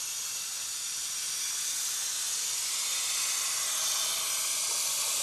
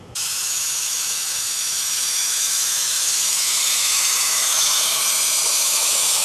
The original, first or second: first